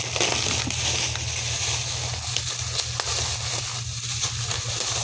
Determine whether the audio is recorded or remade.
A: recorded